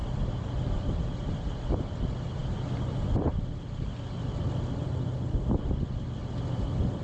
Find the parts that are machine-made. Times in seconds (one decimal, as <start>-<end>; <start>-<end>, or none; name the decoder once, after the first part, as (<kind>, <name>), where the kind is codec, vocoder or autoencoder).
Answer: none